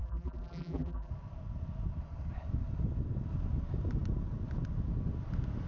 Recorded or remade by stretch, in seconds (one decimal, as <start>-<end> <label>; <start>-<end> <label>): 0.0-1.1 remade; 1.1-5.7 recorded